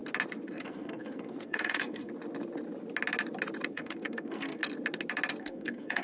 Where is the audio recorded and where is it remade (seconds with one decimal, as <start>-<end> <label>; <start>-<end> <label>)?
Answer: 0.0-0.5 recorded; 0.5-2.1 remade; 2.1-3.7 recorded; 3.7-4.6 remade; 4.6-5.4 recorded; 5.4-6.0 remade

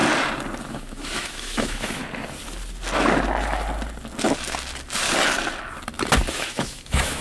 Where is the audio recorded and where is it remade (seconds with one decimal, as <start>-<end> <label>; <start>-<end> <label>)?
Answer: 0.0-0.6 recorded; 0.6-2.0 remade; 2.0-6.3 recorded; 6.3-7.2 remade

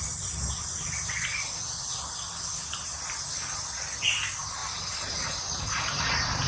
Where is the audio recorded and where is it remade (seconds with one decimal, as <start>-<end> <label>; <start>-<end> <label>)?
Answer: 0.0-6.5 recorded

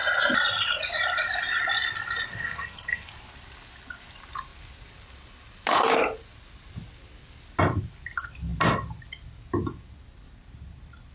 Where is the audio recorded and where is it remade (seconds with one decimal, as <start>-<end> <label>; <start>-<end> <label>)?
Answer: 0.0-2.3 recorded; 2.3-3.1 remade; 3.1-11.1 recorded

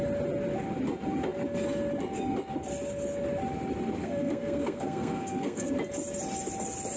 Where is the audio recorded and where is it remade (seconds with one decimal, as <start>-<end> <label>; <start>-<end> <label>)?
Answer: 0.0-4.0 recorded; 4.0-5.7 remade; 5.7-7.0 recorded

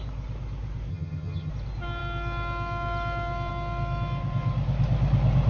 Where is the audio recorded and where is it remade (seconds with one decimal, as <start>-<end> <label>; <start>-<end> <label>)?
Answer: 0.0-0.9 recorded; 0.9-1.5 remade; 1.5-5.5 recorded